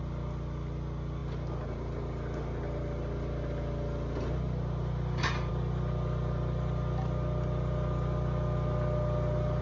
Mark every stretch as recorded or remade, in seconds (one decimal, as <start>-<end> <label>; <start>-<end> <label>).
0.0-9.6 recorded